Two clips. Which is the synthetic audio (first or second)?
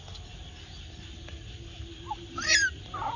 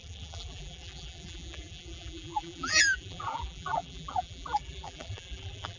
second